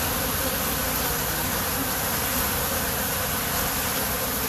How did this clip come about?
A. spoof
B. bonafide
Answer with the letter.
B